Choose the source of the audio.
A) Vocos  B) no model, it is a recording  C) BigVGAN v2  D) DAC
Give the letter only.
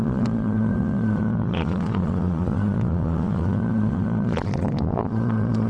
A